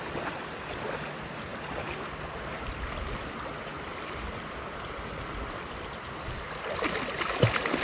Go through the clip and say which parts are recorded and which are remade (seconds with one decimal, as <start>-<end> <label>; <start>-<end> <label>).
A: 0.0-1.5 recorded; 1.5-2.3 remade; 2.3-3.7 recorded; 3.7-6.1 remade; 6.1-7.8 recorded